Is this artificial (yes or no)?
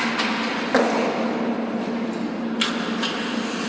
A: no